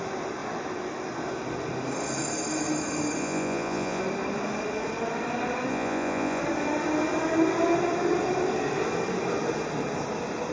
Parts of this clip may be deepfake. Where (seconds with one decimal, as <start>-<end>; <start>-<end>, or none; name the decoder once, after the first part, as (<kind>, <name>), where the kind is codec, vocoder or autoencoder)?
3.2-4.0 (vocoder, Vocos); 5.7-6.4